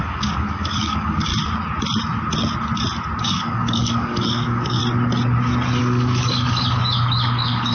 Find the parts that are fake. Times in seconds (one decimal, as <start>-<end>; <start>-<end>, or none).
0.0-1.3; 3.2-4.8; 5.8-7.7